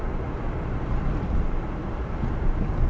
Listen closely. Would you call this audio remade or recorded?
remade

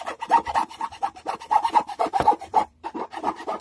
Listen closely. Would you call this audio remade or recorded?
remade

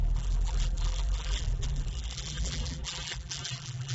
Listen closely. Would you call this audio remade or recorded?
remade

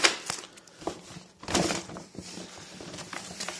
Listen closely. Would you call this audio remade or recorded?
recorded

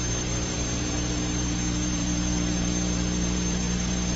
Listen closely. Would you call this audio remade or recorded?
remade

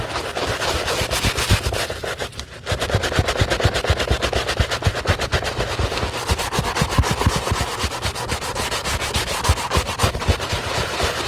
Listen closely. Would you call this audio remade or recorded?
recorded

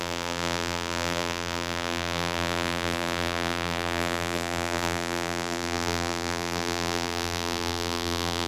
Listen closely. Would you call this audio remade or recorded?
remade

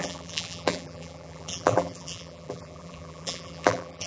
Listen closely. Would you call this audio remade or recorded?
remade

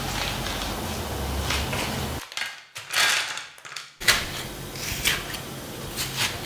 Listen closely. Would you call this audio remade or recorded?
recorded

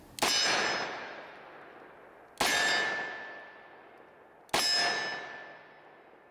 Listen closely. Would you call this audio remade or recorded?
recorded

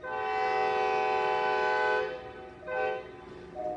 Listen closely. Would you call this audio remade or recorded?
recorded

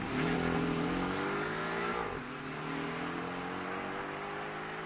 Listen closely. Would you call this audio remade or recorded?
recorded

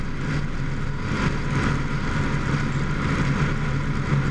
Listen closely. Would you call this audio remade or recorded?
recorded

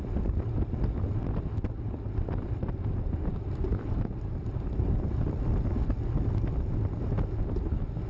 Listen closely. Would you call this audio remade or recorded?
recorded